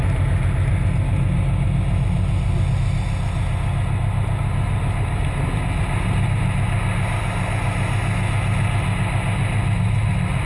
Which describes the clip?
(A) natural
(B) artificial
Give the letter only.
A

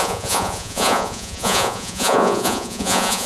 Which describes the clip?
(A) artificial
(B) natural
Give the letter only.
A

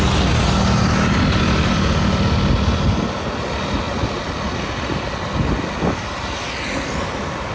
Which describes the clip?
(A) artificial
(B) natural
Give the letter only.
B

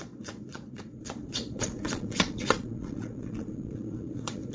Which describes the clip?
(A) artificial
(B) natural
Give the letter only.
A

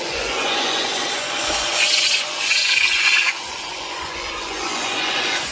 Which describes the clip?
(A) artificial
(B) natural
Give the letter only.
A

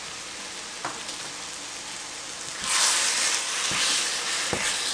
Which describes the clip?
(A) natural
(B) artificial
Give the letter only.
A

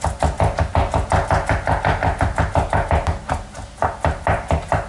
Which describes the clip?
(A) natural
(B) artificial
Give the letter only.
A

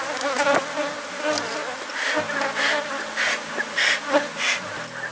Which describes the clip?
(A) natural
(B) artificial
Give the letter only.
A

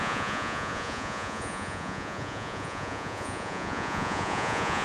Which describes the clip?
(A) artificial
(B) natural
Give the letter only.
A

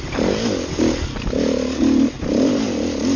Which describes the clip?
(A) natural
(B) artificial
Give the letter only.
A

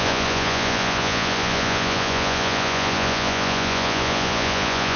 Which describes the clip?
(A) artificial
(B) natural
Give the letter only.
A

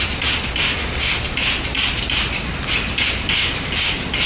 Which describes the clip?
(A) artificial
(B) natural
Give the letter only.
B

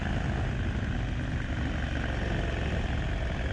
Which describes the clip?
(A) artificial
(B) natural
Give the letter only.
B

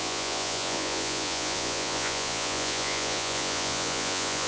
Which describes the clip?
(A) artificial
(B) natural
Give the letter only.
A